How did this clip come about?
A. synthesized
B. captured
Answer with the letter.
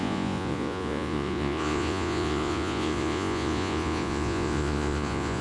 A